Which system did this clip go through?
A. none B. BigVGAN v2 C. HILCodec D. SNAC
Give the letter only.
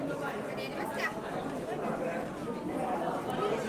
A